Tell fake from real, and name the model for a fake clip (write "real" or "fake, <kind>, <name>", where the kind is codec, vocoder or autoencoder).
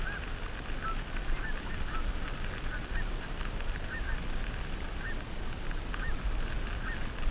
real